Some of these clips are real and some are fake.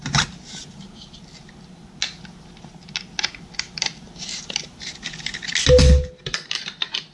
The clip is real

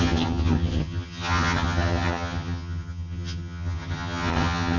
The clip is fake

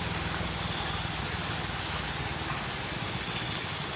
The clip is real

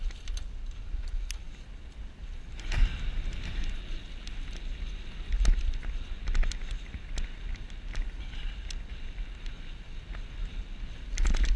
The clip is real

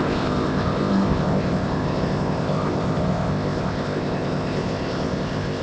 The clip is fake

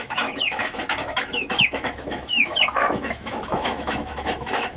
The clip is fake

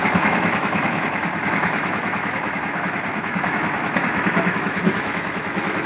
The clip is fake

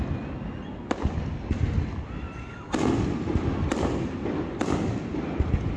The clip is real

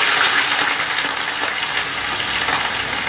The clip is real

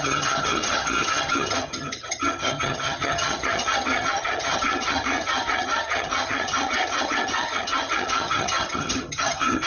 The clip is fake